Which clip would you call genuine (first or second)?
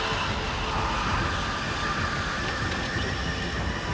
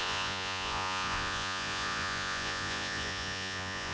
first